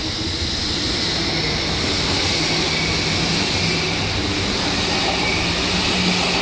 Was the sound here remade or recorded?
recorded